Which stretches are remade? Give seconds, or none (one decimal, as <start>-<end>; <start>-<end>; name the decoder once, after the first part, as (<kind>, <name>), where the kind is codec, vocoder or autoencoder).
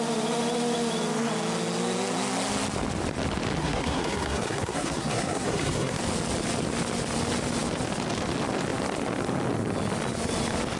3.6-6.0 (codec, SNAC)